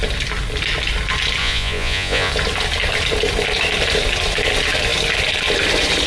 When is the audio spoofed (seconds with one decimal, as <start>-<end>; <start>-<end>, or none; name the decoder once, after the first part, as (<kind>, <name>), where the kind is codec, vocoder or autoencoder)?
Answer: 1.4-2.3 (vocoder, Vocos)